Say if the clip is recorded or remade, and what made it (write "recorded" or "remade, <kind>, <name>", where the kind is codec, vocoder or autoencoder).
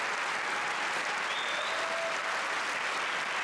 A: recorded